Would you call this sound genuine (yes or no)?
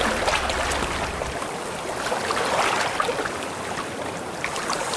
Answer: yes